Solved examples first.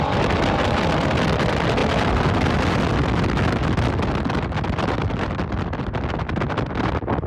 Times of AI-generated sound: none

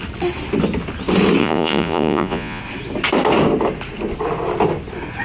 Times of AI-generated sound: 1.4-2.6 (vocoder, Vocos)

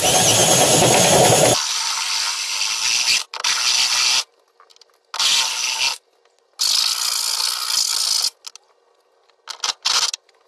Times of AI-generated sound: none

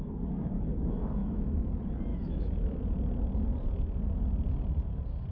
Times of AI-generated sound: 1.2-1.7 (autoencoder, DAC-VAE); 2.1-2.8